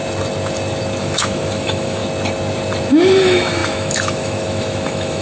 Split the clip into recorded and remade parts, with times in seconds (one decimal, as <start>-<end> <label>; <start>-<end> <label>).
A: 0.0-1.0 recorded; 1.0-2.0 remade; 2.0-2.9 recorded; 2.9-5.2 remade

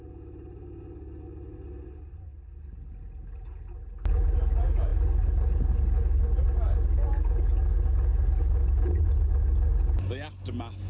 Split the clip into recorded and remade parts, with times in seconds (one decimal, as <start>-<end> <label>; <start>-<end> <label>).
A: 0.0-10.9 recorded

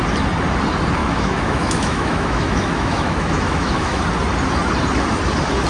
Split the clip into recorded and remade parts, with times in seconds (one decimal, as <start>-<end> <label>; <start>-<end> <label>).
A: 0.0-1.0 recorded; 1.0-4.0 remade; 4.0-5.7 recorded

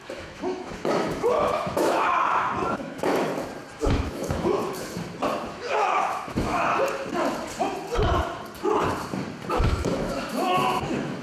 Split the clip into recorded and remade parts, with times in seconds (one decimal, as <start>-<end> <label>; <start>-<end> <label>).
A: 0.0-3.3 remade; 3.3-3.8 recorded; 3.8-4.6 remade; 4.6-5.5 recorded; 5.5-6.7 remade; 6.7-9.5 recorded; 9.5-11.2 remade